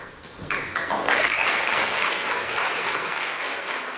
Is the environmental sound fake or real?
fake